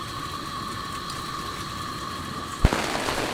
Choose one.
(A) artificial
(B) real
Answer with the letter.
B